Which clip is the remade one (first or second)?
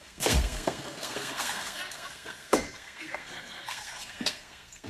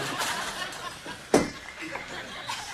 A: first